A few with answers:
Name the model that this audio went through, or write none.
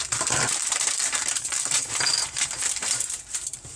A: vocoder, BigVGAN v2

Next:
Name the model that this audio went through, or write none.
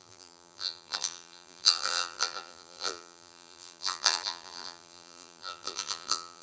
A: vocoder, BigVGAN v2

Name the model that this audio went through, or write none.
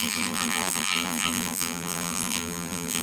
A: vocoder, BigVGAN v2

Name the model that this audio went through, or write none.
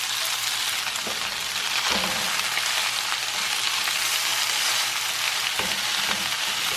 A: none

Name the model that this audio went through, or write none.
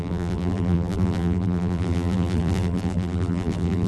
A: vocoder, BigVGAN v2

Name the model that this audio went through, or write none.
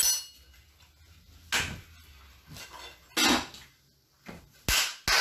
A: none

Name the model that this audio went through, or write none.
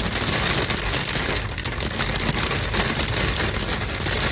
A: none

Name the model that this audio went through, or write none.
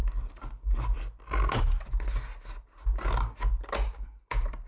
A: none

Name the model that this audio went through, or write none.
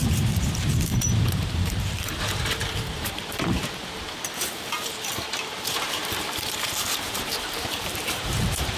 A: vocoder, BigVGAN v2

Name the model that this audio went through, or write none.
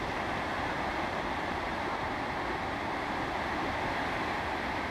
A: none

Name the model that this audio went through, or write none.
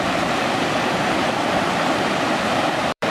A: vocoder, BigVGAN v2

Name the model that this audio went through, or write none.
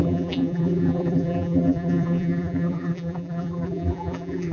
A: vocoder, BigVGAN v2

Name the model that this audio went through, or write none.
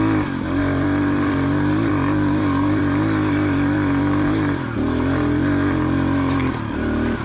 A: vocoder, BigVGAN v2